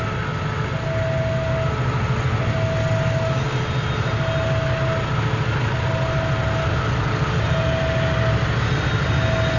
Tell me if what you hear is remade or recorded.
recorded